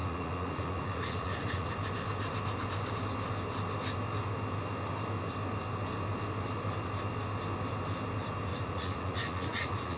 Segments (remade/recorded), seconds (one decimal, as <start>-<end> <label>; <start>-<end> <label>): 0.0-1.7 remade; 1.7-8.5 recorded; 8.5-10.0 remade